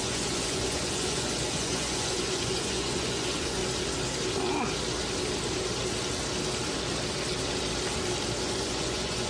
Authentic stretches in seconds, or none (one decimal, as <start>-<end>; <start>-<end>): 3.6-8.4